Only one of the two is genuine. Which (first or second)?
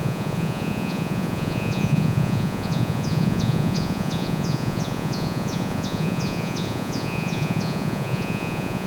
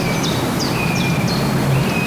second